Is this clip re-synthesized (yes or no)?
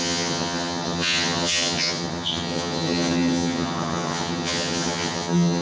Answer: yes